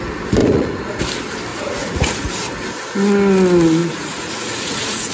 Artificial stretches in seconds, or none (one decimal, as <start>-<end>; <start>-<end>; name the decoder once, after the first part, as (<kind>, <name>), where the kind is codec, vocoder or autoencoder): 0.4-1.0 (vocoder, Vocos); 1.5-2.3; 3.8-5.1